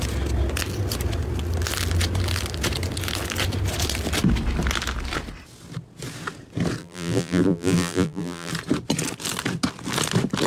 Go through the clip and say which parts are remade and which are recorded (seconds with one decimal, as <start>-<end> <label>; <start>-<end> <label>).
0.0-6.8 recorded; 6.8-8.5 remade; 8.5-10.5 recorded